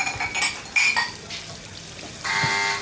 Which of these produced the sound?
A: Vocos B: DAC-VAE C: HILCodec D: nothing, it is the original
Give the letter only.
D